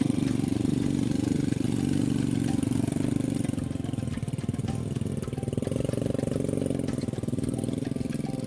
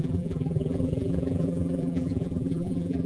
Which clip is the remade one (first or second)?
second